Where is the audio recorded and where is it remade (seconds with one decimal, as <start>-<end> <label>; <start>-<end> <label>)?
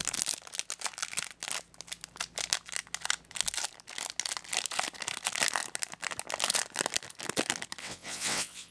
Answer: 0.0-7.8 recorded; 7.8-8.7 remade